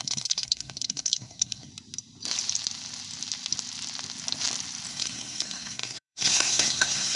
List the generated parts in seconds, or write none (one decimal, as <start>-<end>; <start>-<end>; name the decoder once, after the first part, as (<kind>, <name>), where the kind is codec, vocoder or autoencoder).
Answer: 0.0-1.7 (codec, SNAC); 4.9-7.2